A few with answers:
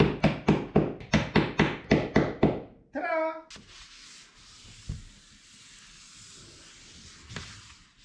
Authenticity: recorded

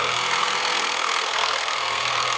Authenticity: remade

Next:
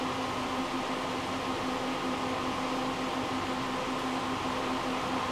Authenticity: recorded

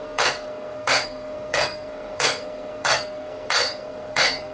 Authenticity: remade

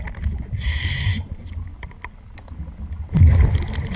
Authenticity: recorded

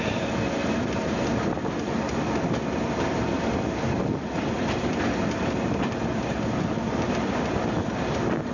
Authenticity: recorded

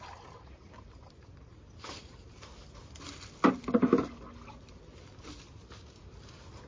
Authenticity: recorded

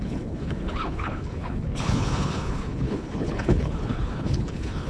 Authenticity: remade